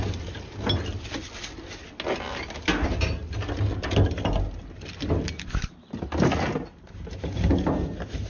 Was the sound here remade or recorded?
recorded